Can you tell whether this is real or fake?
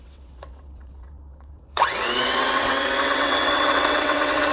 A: fake